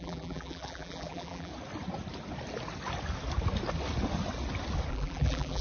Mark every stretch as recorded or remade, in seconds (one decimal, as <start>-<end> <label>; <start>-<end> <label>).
0.0-1.5 remade; 1.5-4.9 recorded; 4.9-5.6 remade